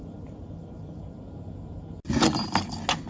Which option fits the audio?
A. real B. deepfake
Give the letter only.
A